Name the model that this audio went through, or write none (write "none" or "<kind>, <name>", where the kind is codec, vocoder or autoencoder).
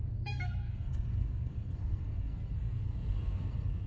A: codec, SNAC